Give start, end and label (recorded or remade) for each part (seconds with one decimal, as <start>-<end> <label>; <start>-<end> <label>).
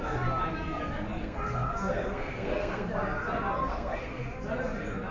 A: 0.0-1.2 recorded; 1.2-2.9 remade; 2.9-3.6 recorded; 3.6-4.2 remade; 4.2-5.1 recorded